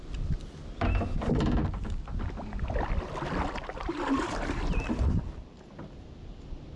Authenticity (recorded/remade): recorded